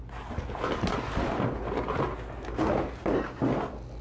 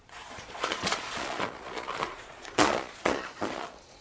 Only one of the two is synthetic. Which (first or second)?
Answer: second